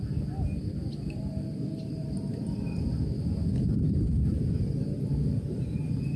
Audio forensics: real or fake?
real